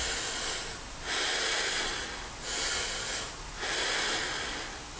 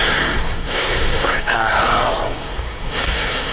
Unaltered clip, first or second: first